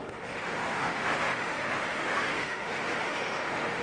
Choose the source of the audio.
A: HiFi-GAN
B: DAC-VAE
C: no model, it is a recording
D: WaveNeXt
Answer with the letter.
B